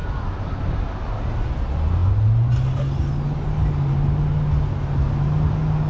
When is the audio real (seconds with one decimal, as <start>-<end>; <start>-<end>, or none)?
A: 0.0-5.9